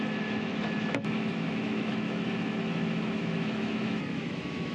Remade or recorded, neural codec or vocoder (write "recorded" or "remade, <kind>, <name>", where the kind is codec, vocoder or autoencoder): remade, autoencoder, DAC-VAE